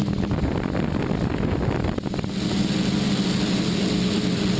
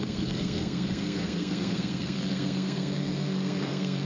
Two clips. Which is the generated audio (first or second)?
second